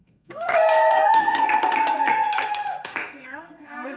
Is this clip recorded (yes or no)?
no